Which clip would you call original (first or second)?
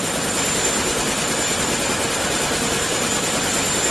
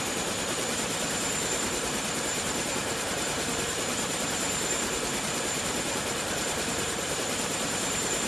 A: first